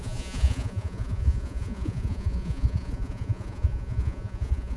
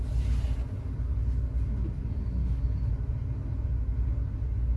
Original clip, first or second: second